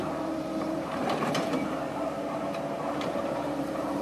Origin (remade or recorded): remade